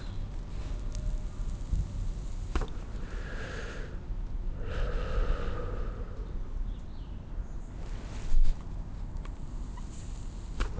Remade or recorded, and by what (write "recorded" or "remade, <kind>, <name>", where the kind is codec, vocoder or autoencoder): recorded